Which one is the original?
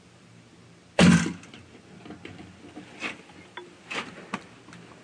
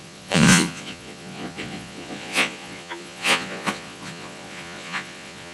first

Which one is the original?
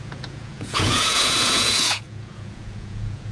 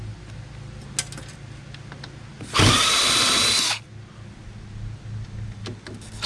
second